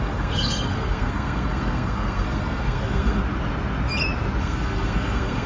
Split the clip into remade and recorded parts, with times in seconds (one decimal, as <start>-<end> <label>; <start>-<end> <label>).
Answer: 0.0-3.2 remade; 3.2-4.4 recorded; 4.4-5.5 remade